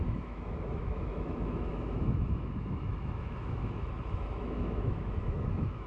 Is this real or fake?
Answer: fake